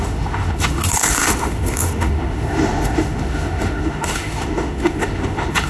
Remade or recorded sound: remade